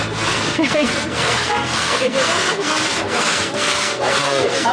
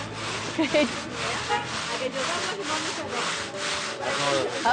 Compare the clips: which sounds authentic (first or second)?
second